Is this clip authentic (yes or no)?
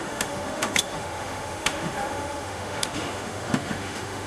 no